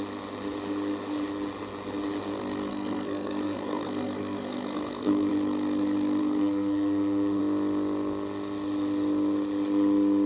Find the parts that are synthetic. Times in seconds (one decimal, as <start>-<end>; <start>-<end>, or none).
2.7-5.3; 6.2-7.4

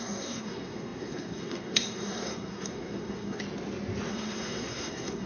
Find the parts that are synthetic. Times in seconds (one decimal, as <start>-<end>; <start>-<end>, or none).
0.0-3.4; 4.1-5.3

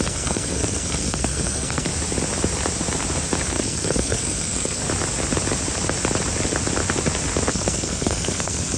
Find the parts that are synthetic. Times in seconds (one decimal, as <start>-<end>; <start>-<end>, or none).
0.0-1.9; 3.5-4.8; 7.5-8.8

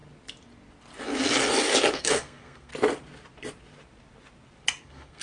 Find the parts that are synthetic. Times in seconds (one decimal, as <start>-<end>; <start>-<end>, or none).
1.9-2.7; 4.8-5.2